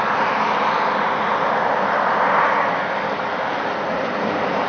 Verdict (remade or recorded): recorded